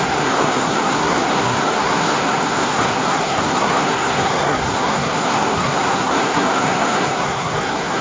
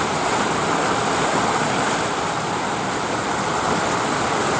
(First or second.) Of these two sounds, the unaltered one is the second